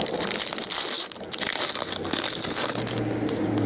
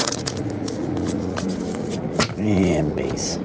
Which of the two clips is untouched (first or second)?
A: first